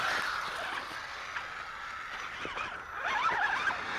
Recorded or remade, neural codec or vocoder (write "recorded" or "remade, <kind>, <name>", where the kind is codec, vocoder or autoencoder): recorded